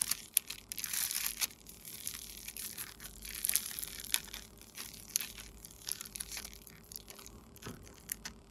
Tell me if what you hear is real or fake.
fake